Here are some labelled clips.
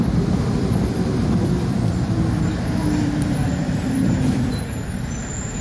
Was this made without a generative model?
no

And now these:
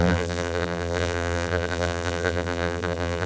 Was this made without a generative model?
no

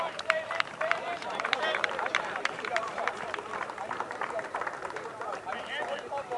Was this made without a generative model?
no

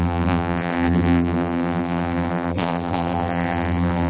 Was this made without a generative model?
no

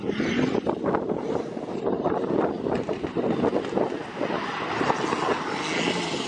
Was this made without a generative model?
yes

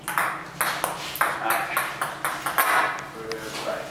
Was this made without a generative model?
yes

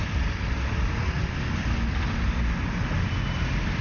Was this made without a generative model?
yes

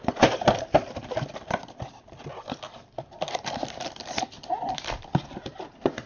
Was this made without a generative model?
no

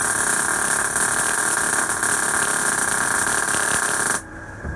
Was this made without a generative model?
no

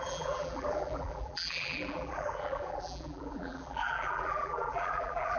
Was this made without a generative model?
no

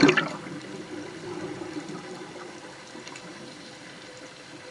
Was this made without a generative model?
yes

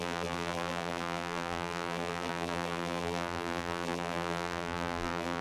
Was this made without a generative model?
no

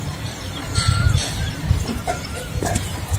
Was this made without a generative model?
no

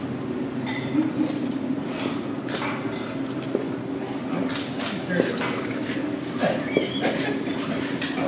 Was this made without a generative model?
yes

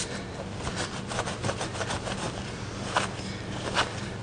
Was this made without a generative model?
no